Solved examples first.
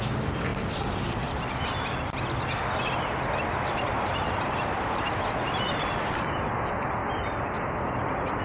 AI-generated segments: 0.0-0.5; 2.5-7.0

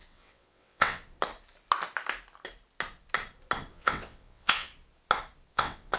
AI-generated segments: 0.0-1.0; 3.7-4.7; 5.5-6.0